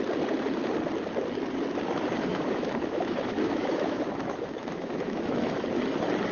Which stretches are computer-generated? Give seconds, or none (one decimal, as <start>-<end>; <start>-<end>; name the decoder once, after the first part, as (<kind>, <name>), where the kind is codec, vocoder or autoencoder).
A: 2.3-5.7 (autoencoder, DAC-VAE)